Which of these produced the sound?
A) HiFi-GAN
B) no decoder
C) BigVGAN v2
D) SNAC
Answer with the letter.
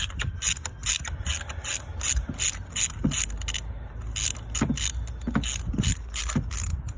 B